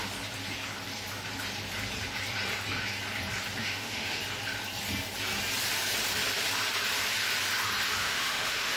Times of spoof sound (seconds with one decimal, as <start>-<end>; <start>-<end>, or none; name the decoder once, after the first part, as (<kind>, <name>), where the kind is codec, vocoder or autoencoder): 3.6-4.2 (autoencoder, DAC-VAE); 8.0-8.8